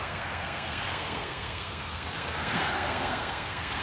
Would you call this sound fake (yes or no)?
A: yes